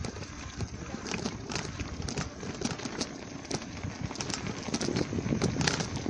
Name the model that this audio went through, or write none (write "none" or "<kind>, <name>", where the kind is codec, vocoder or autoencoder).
none